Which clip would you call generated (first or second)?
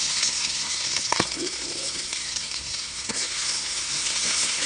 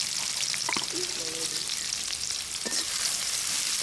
first